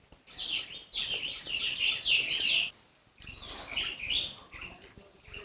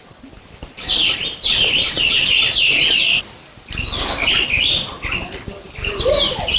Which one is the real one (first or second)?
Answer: first